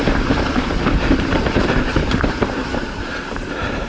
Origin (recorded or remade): remade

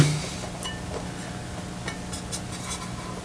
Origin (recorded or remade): recorded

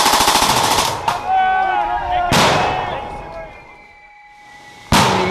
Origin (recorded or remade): recorded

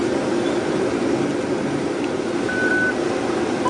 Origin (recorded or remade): recorded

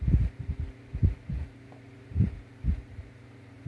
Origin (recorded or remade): remade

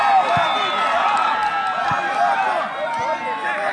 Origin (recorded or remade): recorded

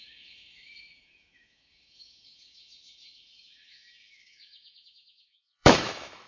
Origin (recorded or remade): remade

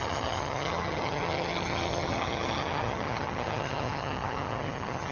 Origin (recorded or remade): remade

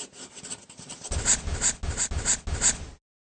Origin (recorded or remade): recorded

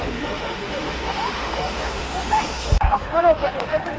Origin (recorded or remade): remade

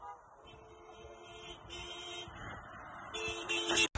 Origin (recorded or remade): recorded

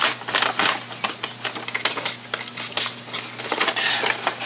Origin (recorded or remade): recorded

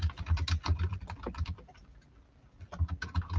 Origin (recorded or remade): recorded